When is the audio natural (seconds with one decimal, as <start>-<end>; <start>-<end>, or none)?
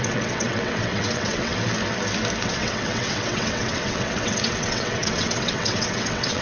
1.5-2.4